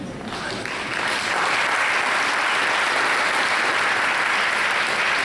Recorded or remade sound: recorded